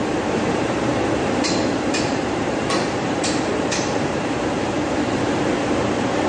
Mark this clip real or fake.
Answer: fake